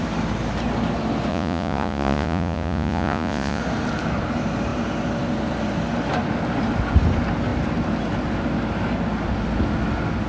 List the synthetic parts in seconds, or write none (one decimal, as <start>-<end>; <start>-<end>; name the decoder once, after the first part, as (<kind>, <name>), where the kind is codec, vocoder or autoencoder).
1.3-3.6 (vocoder, Vocos)